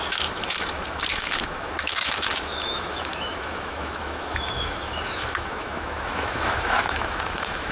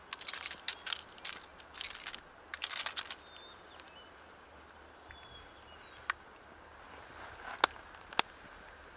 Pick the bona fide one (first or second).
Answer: second